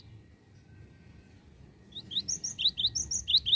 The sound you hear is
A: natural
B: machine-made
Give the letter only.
A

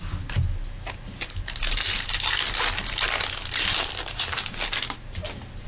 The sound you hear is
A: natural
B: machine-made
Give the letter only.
A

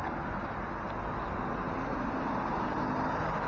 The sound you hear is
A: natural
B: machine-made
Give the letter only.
A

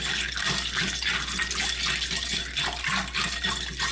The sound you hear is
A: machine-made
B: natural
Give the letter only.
B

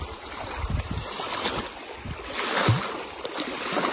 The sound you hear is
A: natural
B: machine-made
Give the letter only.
A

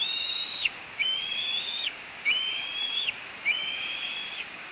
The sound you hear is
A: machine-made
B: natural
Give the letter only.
A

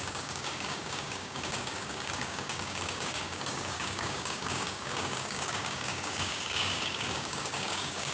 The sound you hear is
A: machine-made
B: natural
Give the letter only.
A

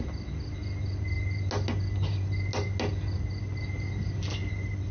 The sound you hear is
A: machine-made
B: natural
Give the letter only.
B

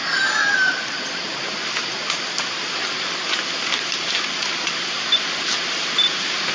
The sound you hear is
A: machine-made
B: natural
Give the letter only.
B